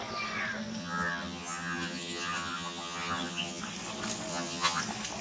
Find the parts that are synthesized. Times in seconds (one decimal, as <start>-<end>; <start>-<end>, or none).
0.8-3.6; 4.3-4.8